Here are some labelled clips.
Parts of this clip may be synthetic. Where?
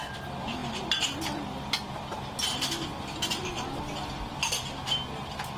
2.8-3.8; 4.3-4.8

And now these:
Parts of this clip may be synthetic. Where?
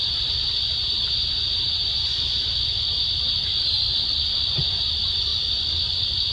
0.0-2.1; 4.7-5.3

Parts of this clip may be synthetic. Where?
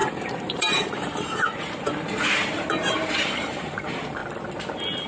0.0-4.2